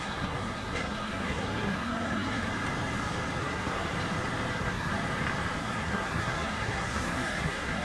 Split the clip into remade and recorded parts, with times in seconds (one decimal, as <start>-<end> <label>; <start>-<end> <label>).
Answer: 0.0-2.5 remade; 2.5-3.4 recorded; 3.4-3.9 remade; 3.9-4.5 recorded; 4.5-4.9 remade; 4.9-5.6 recorded; 5.6-7.8 remade